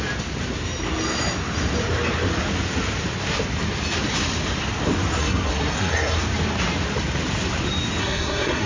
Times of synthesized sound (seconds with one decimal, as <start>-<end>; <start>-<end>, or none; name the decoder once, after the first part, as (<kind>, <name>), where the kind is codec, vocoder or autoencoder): 5.2-6.2 (codec, SNAC); 8.0-8.7